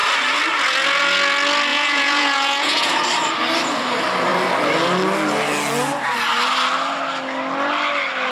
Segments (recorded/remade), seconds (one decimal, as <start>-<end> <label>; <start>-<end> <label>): 0.0-1.7 recorded; 1.7-2.9 remade; 2.9-8.3 recorded